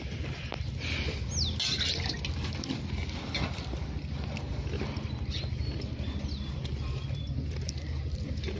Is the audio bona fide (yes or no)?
yes